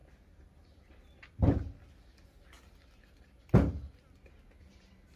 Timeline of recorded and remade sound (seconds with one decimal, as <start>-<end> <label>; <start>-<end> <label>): 0.0-5.2 recorded